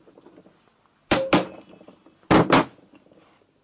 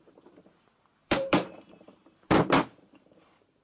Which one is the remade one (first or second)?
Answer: second